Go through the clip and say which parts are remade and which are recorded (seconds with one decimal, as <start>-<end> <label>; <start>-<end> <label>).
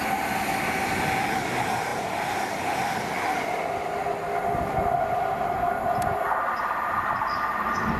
0.0-8.0 recorded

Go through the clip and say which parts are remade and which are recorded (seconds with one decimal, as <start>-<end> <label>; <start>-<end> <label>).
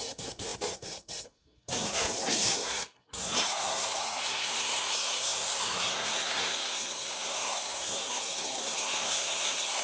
0.0-9.8 remade